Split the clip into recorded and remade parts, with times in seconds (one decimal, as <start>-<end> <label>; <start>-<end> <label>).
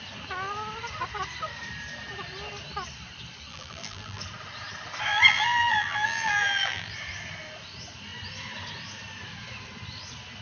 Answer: 0.0-3.5 recorded; 3.5-4.2 remade; 4.2-5.1 recorded; 5.1-6.9 remade; 6.9-10.4 recorded